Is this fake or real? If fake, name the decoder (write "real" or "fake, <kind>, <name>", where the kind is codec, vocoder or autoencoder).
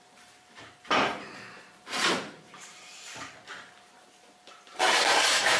fake, vocoder, BigVGAN v2